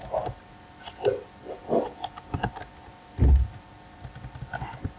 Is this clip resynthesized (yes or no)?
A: no